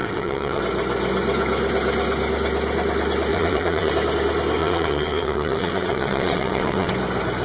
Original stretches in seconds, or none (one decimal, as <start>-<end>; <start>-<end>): 0.6-3.3; 3.9-4.6; 6.9-7.4

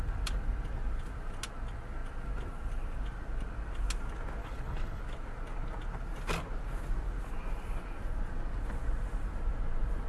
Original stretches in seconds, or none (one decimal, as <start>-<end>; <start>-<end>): 0.0-4.4; 5.0-10.1

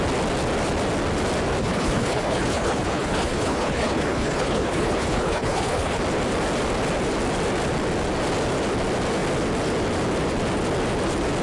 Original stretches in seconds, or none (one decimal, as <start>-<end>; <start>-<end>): 0.0-1.6; 6.0-11.4